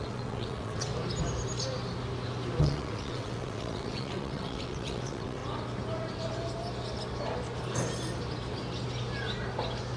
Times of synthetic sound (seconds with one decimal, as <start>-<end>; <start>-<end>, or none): 0.0-0.9; 2.6-5.4